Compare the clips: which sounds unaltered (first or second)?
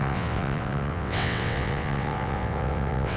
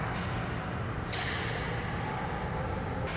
second